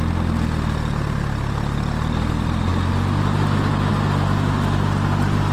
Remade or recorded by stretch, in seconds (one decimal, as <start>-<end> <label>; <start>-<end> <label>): 0.0-5.5 recorded

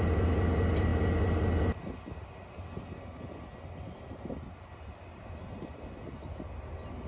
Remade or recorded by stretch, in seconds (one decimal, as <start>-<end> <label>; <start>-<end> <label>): 0.0-7.1 recorded